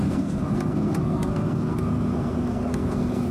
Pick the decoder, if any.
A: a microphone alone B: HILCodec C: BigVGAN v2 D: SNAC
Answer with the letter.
D